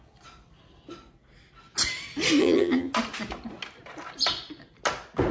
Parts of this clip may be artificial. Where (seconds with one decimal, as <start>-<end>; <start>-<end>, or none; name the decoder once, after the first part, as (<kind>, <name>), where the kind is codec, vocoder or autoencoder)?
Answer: 2.4-2.9 (vocoder, HiFi-GAN)